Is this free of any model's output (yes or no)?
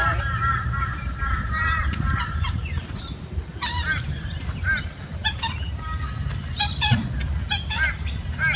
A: yes